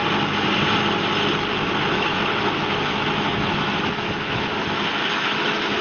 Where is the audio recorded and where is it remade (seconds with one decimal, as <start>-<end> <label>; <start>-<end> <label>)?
0.0-1.9 recorded; 1.9-5.8 remade